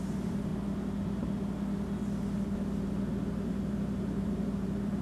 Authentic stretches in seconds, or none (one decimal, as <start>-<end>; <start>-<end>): 0.5-3.5